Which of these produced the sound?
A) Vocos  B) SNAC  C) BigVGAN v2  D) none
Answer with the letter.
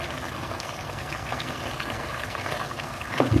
B